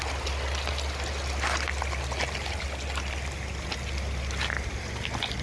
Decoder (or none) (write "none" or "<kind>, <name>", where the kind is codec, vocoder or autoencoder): none